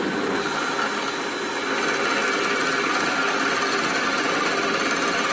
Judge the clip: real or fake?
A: real